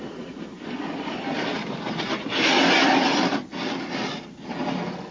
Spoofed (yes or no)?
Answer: no